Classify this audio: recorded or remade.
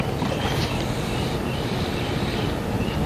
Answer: recorded